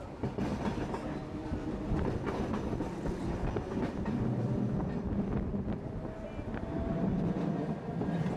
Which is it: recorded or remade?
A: recorded